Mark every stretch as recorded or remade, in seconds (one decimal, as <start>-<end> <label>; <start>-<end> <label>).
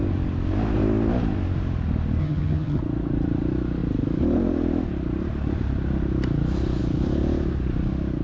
0.0-2.2 recorded; 2.2-2.8 remade; 2.8-8.2 recorded